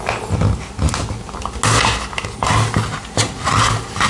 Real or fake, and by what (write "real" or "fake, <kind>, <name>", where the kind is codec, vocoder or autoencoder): real